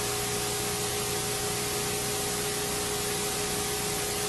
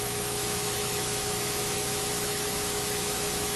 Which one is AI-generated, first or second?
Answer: second